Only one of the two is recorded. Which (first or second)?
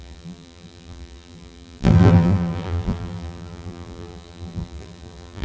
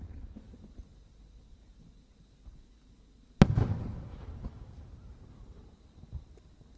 second